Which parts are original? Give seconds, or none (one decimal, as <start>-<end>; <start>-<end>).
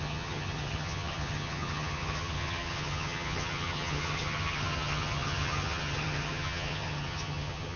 none